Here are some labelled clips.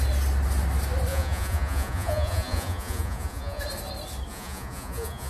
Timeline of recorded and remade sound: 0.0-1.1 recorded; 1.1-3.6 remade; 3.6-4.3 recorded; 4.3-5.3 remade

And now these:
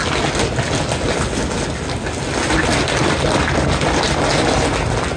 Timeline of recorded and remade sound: 0.0-3.0 recorded; 3.0-4.3 remade; 4.3-5.2 recorded

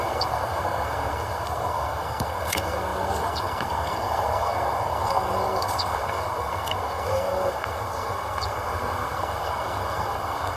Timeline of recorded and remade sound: 0.0-10.6 remade

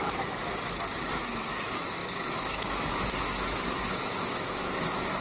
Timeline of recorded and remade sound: 0.0-0.4 remade; 0.4-1.0 recorded; 1.0-5.2 remade

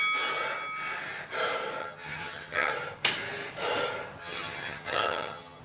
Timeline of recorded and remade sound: 0.0-1.8 recorded; 1.8-2.7 remade; 2.7-4.2 recorded; 4.2-5.6 remade

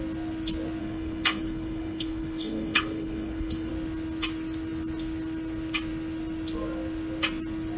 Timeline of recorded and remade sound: 0.0-0.8 recorded; 0.8-3.7 remade; 3.7-7.8 recorded

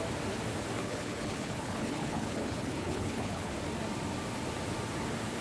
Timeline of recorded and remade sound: 0.0-0.8 recorded; 0.8-3.5 remade; 3.5-5.4 recorded

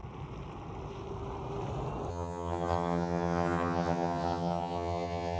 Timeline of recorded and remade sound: 0.0-2.1 recorded; 2.1-5.4 remade